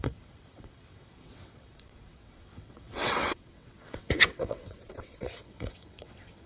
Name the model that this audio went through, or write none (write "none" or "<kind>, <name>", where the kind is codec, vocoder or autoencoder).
vocoder, WaveNeXt